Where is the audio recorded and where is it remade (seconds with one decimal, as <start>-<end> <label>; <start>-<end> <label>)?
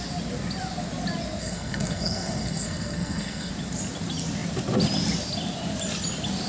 0.0-1.4 recorded; 1.4-3.5 remade; 3.5-6.5 recorded